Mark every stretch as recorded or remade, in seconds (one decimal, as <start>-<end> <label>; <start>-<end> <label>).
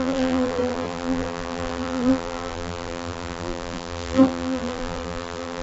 0.0-5.6 remade